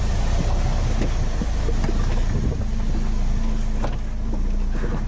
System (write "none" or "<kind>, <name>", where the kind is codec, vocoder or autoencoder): none